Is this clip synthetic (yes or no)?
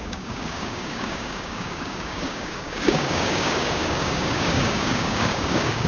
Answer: yes